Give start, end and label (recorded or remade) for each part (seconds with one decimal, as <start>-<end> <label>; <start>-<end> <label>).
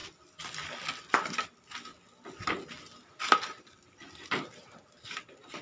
0.0-5.6 recorded